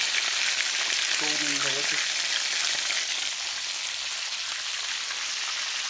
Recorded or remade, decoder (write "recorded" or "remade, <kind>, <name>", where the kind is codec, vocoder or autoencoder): recorded